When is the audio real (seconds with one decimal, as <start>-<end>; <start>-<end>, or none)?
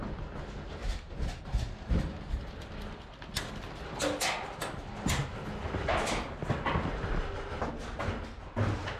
0.0-9.0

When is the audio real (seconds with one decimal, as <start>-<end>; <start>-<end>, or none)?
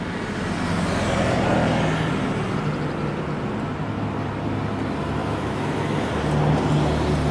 0.0-5.2; 6.1-7.3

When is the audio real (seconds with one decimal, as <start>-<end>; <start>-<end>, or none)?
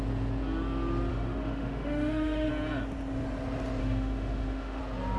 0.0-1.1; 2.5-3.8; 4.8-5.2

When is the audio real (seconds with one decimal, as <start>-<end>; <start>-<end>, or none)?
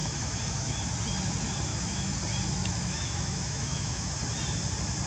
0.8-1.7; 2.2-2.6; 4.1-5.1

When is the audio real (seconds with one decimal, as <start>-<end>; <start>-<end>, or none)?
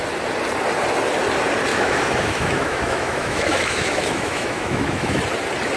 0.0-1.7; 5.2-5.8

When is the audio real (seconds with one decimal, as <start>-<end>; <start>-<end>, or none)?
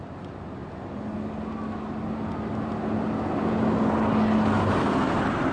0.0-5.5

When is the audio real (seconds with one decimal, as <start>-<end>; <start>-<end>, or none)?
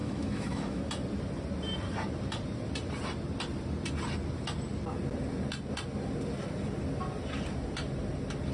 0.8-8.5